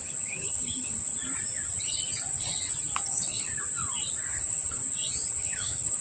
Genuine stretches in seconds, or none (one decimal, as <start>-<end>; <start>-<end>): 1.1-3.1; 3.5-4.3; 4.8-5.3